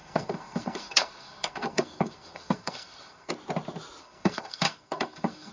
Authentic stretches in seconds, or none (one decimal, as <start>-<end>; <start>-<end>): 3.3-4.0